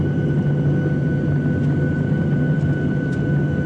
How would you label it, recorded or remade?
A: recorded